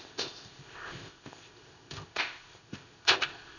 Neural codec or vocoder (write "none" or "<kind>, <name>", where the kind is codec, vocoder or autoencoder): codec, ZipCodec